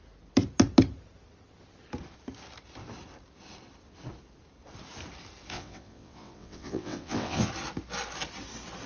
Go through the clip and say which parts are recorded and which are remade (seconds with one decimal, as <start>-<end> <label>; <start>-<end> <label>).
0.0-5.5 recorded; 5.5-7.5 remade; 7.5-8.9 recorded